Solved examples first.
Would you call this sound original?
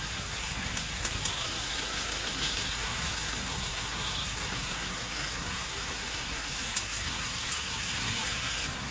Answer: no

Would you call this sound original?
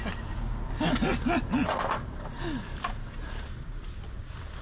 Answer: yes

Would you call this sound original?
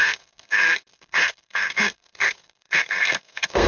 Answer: no